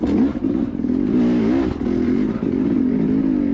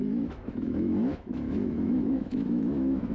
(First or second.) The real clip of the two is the first